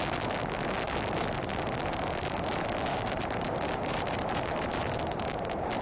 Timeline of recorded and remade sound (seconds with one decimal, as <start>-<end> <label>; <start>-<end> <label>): 0.0-2.9 recorded; 2.9-5.8 remade